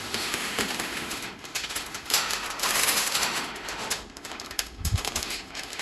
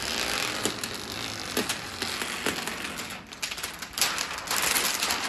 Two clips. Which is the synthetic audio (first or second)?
first